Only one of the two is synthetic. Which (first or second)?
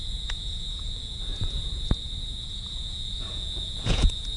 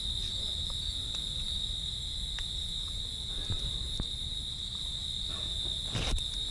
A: first